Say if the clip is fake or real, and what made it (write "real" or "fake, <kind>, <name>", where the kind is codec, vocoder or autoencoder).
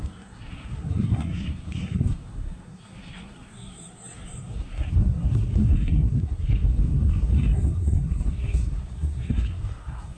fake, codec, SNAC